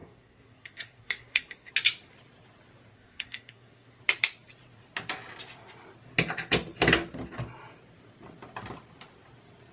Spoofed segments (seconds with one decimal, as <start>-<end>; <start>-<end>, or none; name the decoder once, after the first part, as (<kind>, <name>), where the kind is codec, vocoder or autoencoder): 0.0-1.7 (codec, SNAC); 2.9-4.0